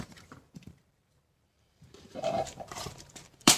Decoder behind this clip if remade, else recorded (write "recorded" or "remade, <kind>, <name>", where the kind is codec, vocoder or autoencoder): remade, vocoder, BigVGAN v2